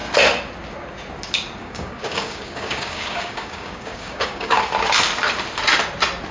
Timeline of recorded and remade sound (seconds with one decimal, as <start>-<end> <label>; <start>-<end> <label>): 0.0-1.6 recorded; 1.6-4.6 remade; 4.6-6.3 recorded